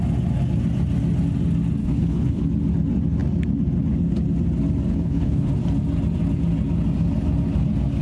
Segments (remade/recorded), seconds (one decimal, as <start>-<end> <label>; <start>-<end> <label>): 0.0-1.8 recorded; 1.8-2.4 remade; 2.4-4.9 recorded; 4.9-5.5 remade; 5.5-8.0 recorded